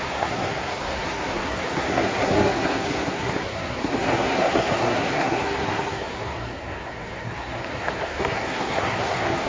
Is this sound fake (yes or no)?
yes